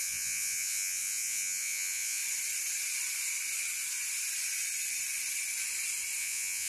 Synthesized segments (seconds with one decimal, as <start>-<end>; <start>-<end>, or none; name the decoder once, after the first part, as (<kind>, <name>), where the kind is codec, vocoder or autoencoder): 0.0-2.2 (vocoder, Vocos); 6.2-6.7

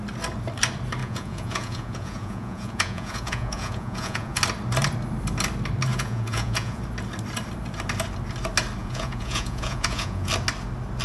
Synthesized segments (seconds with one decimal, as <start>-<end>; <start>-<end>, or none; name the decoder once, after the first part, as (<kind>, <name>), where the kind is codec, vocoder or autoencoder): 1.0-4.4 (vocoder, Vocos); 5.9-6.8; 8.8-10.3

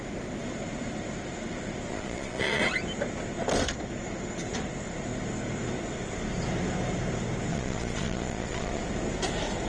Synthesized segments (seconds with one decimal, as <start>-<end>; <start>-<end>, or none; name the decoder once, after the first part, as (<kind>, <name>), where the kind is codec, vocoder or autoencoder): 1.9-2.6 (vocoder, Vocos); 7.5-8.8

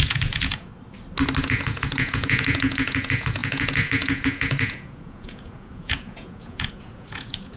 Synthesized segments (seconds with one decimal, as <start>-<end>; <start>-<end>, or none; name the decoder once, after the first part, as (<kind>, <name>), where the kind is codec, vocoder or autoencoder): 0.0-0.7 (vocoder, Vocos); 1.4-7.6